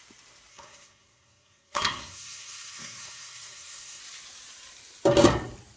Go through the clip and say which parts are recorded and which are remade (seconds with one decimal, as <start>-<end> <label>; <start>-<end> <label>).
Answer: 0.0-0.5 recorded; 0.5-4.0 remade; 4.0-5.8 recorded